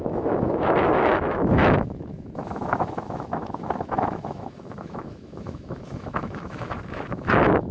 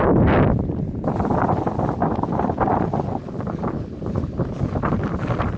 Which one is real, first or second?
second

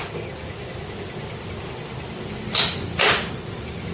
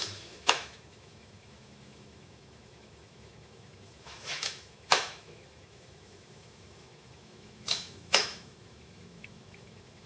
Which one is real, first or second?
first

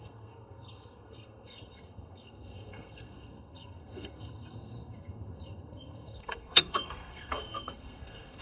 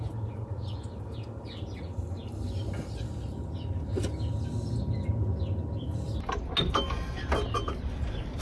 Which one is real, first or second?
second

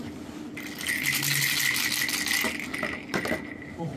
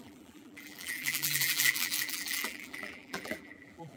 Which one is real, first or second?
first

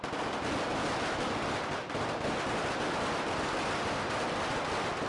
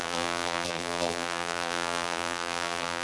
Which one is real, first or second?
first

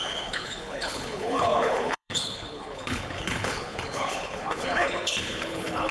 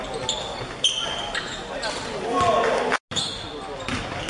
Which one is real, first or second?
second